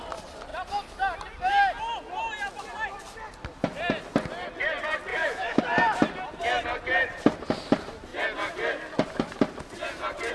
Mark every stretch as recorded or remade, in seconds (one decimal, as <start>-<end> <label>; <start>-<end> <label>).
0.0-5.1 recorded; 5.1-5.6 remade; 5.6-10.3 recorded